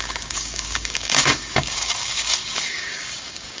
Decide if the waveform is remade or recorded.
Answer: remade